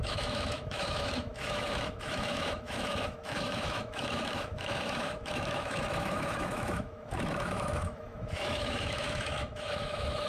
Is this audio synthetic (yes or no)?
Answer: yes